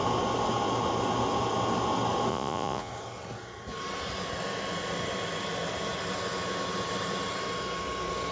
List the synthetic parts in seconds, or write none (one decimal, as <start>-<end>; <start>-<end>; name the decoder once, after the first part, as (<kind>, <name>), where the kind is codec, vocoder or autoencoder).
2.3-2.9 (vocoder, Vocos)